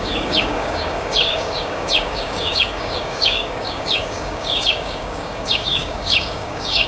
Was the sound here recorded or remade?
remade